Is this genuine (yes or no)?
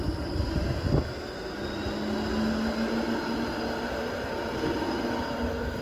yes